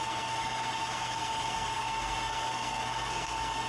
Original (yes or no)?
no